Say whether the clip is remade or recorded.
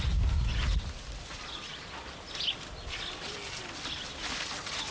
recorded